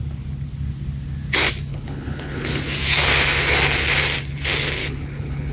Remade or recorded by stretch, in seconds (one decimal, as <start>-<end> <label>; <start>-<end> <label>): 0.0-1.7 recorded; 1.7-2.6 remade; 2.6-4.8 recorded; 4.8-5.5 remade